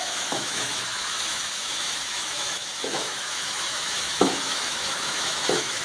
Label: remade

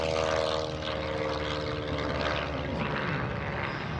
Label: recorded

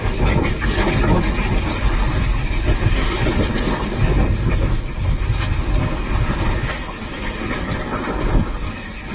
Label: recorded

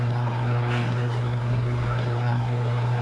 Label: remade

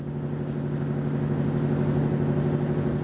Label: recorded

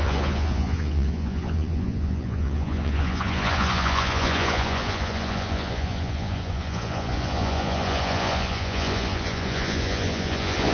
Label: remade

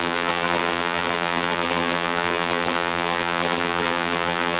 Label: remade